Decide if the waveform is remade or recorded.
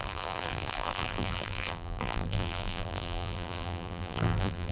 remade